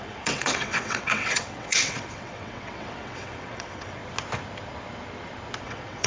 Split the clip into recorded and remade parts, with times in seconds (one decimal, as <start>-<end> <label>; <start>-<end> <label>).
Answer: 0.0-4.0 remade; 4.0-5.6 recorded; 5.6-6.1 remade